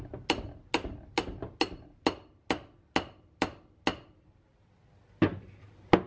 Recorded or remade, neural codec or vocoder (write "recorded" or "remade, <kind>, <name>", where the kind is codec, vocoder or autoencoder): recorded